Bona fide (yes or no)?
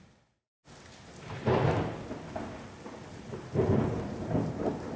yes